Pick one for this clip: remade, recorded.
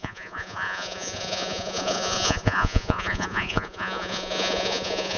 remade